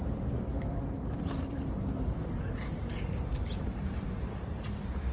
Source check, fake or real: fake